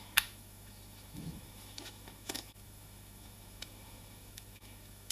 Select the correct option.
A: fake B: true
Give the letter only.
A